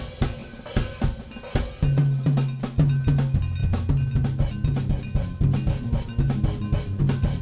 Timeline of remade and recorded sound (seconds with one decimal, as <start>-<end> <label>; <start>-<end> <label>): 0.0-0.4 recorded; 0.4-1.0 remade; 1.0-7.4 recorded